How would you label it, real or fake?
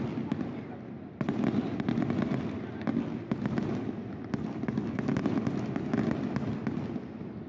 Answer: real